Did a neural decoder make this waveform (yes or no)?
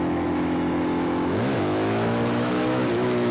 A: yes